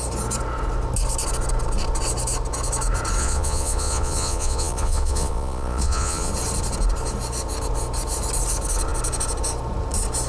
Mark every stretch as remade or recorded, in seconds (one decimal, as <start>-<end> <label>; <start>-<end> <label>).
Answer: 0.0-3.2 recorded; 3.2-6.3 remade; 6.3-10.3 recorded